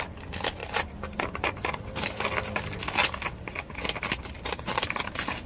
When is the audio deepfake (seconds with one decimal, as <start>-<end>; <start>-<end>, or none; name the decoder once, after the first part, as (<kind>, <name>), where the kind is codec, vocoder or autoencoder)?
none